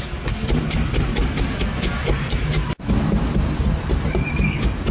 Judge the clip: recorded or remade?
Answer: recorded